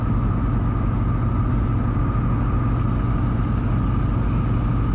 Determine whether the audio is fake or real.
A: real